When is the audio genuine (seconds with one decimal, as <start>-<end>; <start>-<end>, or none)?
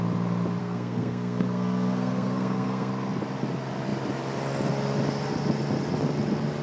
0.0-0.6; 2.9-6.6